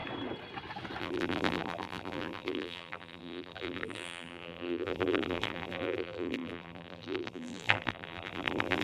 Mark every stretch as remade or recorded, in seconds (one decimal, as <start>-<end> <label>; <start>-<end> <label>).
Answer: 0.0-1.0 recorded; 1.0-8.8 remade